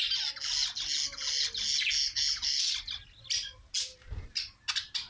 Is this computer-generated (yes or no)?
no